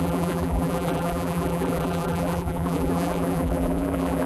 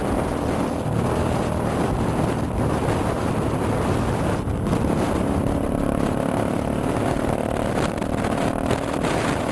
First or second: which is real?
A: second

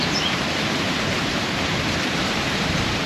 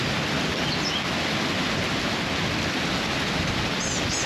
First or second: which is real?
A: second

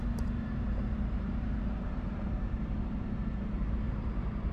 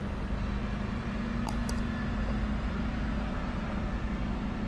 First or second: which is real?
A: second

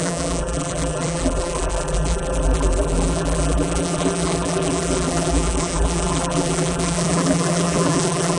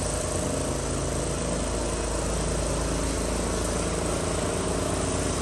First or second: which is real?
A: second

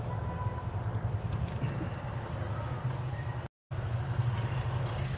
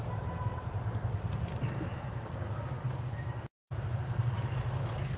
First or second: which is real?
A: first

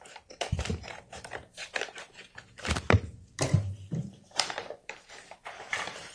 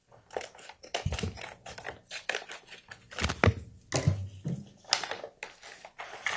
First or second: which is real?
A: second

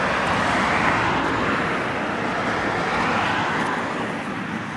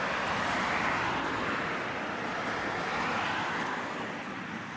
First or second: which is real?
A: first